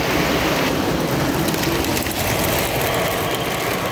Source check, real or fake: real